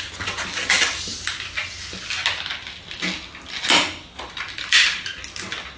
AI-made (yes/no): no